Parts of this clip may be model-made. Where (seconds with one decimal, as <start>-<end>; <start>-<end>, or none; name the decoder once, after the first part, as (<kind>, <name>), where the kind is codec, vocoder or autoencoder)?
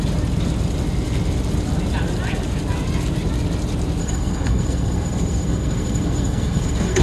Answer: 4.0-7.0 (codec, SNAC)